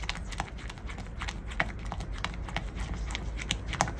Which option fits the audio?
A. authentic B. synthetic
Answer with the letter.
A